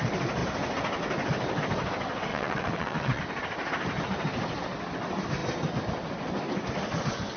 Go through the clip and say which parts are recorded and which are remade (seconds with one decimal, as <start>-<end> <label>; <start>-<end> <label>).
0.0-2.3 recorded; 2.3-3.2 remade; 3.2-7.4 recorded